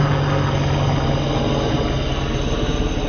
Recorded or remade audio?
recorded